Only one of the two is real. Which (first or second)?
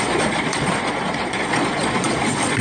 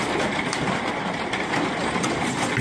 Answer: second